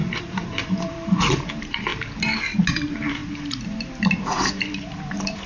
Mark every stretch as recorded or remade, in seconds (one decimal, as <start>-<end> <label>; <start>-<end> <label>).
0.0-1.9 remade; 1.9-2.7 recorded; 2.7-5.5 remade